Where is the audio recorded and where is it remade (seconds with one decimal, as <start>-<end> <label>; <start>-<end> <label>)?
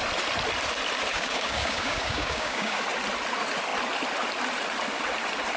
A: 0.0-1.1 recorded; 1.1-2.8 remade; 2.8-5.6 recorded